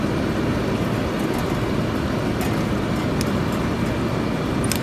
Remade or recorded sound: recorded